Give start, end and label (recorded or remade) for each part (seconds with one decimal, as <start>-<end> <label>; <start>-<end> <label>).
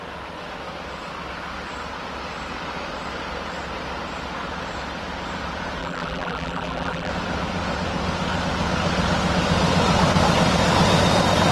0.0-5.8 recorded; 5.8-7.1 remade; 7.1-11.5 recorded